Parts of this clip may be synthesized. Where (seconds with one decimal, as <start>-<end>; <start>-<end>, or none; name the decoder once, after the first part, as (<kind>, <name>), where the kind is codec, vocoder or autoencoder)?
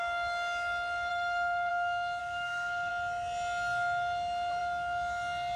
1.1-1.7 (codec, SNAC); 2.2-2.9